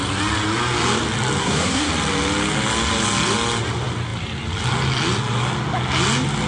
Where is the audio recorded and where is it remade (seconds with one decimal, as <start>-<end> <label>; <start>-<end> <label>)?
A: 0.0-1.4 recorded; 1.4-1.9 remade; 1.9-6.5 recorded